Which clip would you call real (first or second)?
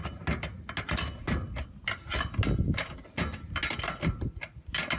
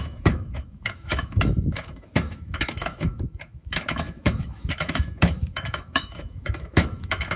first